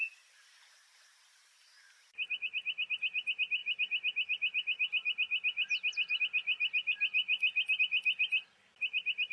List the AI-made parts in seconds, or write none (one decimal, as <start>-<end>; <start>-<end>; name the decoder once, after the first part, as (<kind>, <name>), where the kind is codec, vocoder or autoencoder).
none